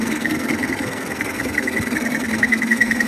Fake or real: fake